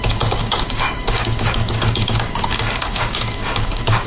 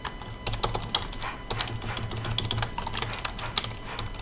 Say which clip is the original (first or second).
second